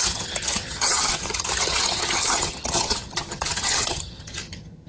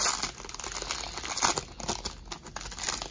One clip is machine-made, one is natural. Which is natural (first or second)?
second